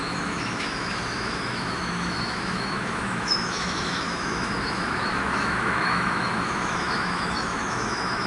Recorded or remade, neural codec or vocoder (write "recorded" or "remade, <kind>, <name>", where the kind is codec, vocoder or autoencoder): remade, autoencoder, DAC-VAE